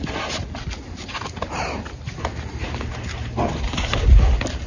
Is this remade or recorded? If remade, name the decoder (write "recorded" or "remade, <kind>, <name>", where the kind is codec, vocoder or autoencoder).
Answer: recorded